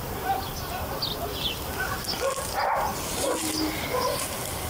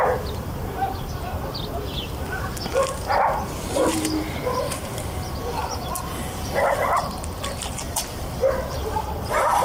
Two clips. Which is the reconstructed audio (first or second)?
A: second